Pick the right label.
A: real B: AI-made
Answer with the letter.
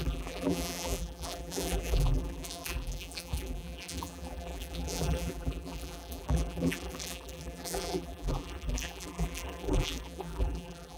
B